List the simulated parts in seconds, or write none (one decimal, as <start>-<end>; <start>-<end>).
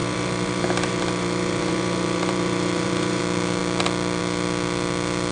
0.0-3.2